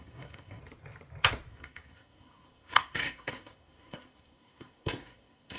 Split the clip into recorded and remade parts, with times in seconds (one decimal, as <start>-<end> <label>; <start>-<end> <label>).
0.0-0.6 remade; 0.6-1.5 recorded; 1.5-5.6 remade